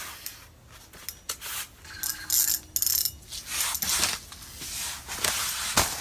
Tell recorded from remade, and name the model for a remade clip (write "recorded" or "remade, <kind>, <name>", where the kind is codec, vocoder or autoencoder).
recorded